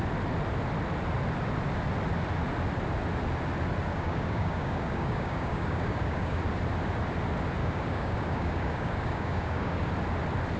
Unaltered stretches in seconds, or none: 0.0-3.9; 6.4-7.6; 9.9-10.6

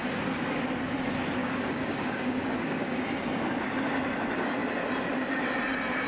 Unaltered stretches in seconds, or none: 0.0-1.4; 3.0-6.1

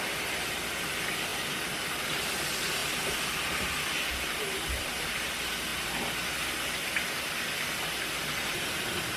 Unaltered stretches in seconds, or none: 0.0-9.2

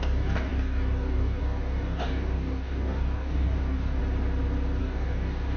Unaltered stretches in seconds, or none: 4.0-4.8

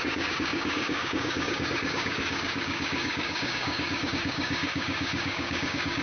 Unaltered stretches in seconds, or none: none

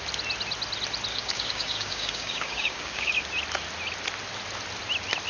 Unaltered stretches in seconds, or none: 0.0-1.1; 3.2-5.3